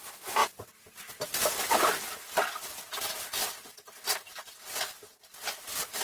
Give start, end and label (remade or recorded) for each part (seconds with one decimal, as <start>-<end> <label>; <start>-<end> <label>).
0.0-6.0 recorded